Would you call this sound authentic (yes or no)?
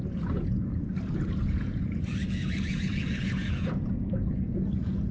no